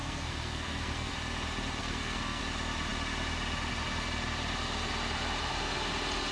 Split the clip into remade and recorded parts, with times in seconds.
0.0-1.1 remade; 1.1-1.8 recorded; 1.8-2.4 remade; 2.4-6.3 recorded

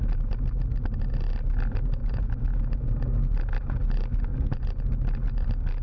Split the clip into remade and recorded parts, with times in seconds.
0.0-2.0 recorded; 2.0-2.6 remade; 2.6-4.3 recorded; 4.3-4.9 remade; 4.9-5.8 recorded